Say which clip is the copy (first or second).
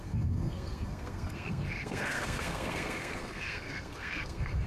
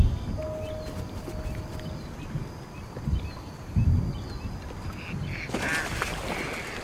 first